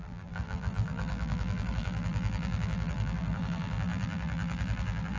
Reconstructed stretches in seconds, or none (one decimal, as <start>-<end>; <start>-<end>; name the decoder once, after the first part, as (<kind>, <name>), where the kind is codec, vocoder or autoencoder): 0.0-5.2 (vocoder, BigVGAN v2)